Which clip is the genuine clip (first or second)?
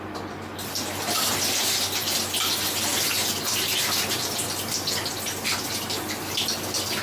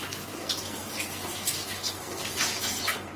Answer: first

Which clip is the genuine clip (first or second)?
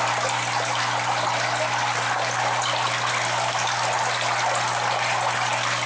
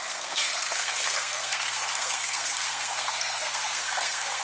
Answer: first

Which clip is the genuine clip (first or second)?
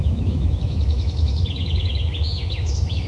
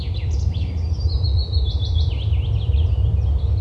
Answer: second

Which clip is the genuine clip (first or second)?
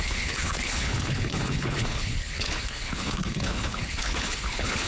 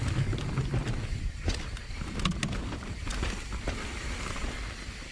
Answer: second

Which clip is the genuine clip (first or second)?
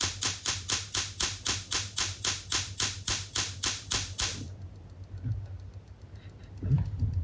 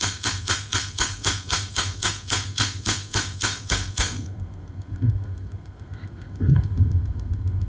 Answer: first